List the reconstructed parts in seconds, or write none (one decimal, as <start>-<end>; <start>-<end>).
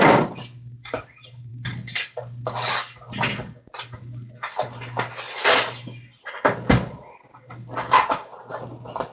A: none